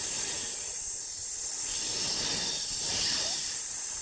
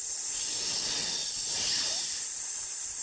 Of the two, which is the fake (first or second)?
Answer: first